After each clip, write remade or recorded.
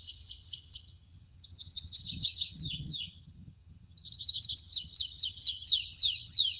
remade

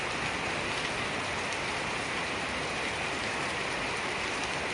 recorded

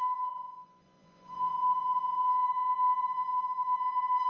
remade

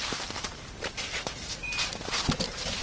remade